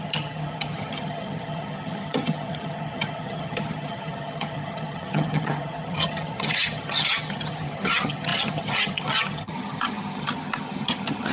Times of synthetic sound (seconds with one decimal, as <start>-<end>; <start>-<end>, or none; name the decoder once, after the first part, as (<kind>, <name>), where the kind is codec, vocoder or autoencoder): 0.0-11.3 (vocoder, HiFi-GAN)